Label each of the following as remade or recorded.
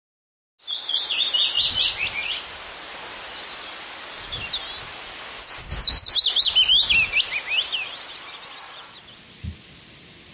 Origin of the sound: recorded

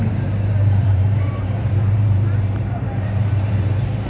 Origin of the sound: remade